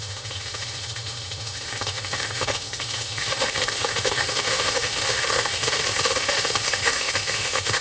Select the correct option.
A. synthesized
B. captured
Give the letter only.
A